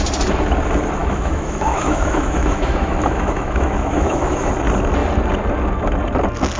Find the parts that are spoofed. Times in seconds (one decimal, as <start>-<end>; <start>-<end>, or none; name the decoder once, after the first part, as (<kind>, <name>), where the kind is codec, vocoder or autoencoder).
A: 1.0-4.5 (autoencoder, DAC-VAE)